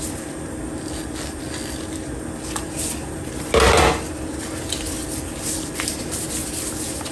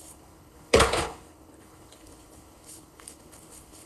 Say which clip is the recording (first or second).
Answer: first